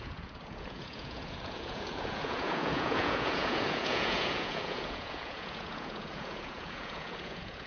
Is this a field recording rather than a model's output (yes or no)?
no